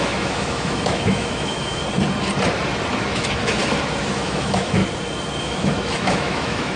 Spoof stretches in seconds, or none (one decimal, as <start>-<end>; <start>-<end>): 0.0-1.8; 3.0-3.6; 4.1-4.8; 5.4-6.8